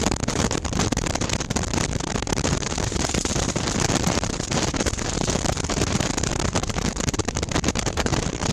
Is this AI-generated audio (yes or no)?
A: yes